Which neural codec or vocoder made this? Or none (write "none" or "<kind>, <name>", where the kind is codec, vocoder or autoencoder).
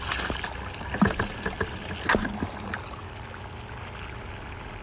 none